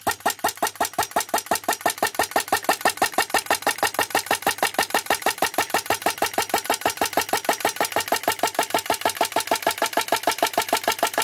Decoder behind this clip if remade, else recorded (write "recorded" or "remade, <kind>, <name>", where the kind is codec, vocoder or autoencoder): recorded